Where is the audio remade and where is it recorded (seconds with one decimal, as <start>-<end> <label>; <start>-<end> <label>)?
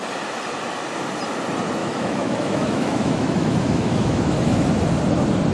0.0-1.8 recorded; 1.8-4.7 remade; 4.7-5.5 recorded